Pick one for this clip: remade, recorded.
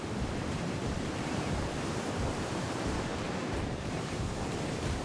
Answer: remade